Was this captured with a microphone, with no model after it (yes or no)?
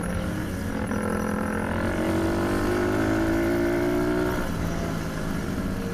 yes